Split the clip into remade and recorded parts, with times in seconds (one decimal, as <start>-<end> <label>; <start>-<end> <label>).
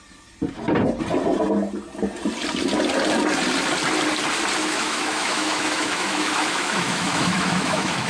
0.0-4.6 recorded; 4.6-8.1 remade